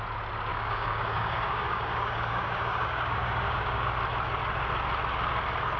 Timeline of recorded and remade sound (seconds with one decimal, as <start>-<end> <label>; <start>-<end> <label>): 0.0-0.5 recorded; 0.5-4.0 remade; 4.0-5.8 recorded